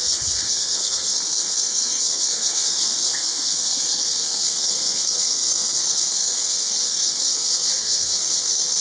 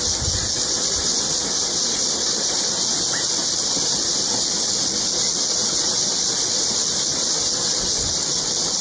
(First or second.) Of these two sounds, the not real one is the first